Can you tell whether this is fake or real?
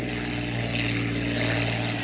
real